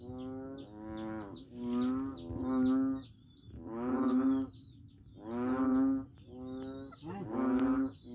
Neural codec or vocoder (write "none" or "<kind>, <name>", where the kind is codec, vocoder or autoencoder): none